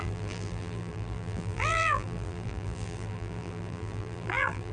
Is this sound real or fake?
fake